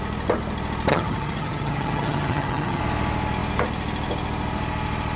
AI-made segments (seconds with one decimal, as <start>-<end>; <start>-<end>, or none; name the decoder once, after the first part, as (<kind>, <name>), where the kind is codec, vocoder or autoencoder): 0.9-2.8 (vocoder, HiFi-GAN)